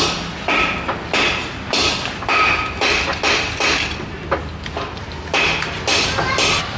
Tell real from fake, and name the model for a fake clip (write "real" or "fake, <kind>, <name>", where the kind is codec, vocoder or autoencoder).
real